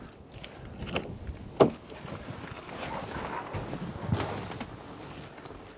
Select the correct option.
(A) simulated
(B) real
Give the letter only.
B